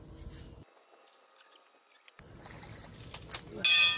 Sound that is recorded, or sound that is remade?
recorded